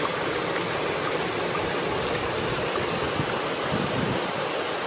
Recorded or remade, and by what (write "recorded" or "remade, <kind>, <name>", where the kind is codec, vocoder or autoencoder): recorded